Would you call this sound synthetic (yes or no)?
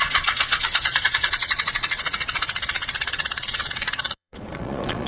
yes